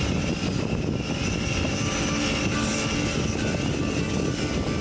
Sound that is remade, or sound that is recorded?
recorded